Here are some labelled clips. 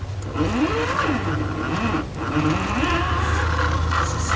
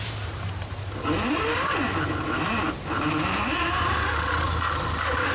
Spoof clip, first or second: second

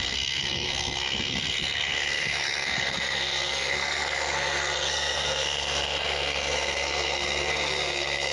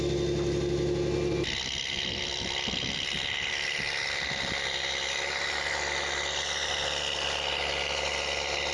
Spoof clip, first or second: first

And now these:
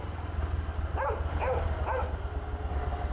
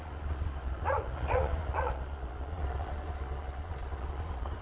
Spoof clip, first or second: second